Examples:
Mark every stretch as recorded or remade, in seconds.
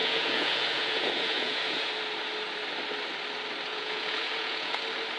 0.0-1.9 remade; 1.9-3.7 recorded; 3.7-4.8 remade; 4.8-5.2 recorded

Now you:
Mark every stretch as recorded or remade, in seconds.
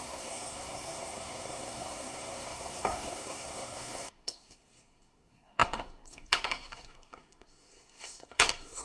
0.0-8.8 remade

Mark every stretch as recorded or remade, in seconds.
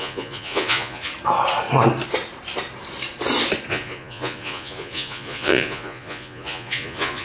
0.0-1.1 remade; 1.1-3.7 recorded; 3.7-7.2 remade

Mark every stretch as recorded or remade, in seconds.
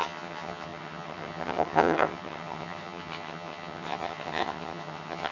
0.0-5.3 remade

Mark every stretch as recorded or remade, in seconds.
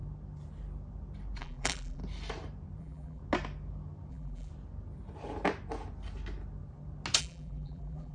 0.0-1.4 recorded; 1.4-2.0 remade; 2.0-2.8 recorded; 2.8-3.2 remade; 3.2-4.1 recorded; 4.1-4.5 remade; 4.5-7.2 recorded; 7.2-8.1 remade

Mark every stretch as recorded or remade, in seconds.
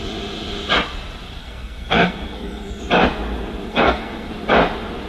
0.0-1.4 recorded; 1.4-2.8 remade; 2.8-3.7 recorded; 3.7-4.3 remade; 4.3-5.1 recorded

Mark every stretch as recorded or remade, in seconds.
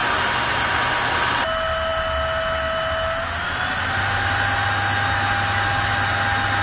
0.0-6.6 recorded